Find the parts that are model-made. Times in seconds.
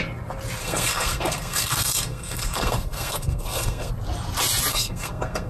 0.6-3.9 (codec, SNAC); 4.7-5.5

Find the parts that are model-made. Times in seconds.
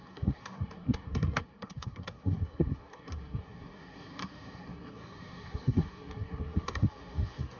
0.0-7.6 (codec, SNAC)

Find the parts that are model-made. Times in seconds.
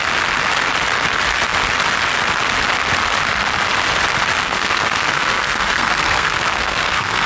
4.4-7.3 (codec, SNAC)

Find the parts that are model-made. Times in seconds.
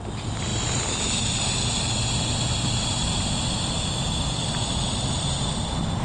none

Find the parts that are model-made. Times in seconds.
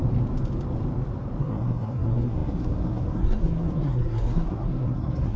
1.4-5.4 (codec, SNAC)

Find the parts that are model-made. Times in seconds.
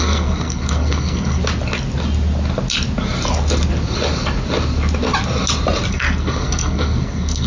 0.0-1.4 (codec, SNAC); 5.9-7.5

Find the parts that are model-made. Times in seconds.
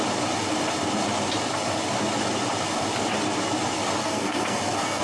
4.0-5.0 (codec, SNAC)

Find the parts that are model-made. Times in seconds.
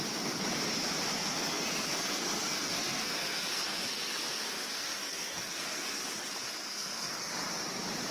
1.1-6.0 (codec, SNAC); 6.4-7.3